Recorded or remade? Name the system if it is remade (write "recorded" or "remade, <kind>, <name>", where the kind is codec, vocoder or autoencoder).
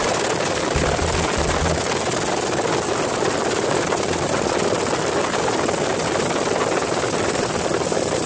recorded